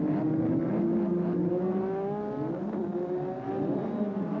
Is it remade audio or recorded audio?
recorded